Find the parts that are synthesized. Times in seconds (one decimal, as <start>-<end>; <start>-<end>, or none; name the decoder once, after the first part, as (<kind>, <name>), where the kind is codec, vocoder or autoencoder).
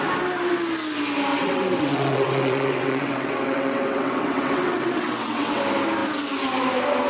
1.3-5.6 (vocoder, WaveNeXt)